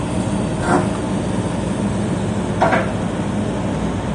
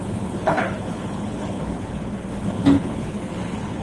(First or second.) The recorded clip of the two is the first